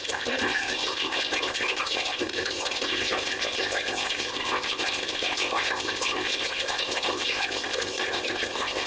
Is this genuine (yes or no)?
no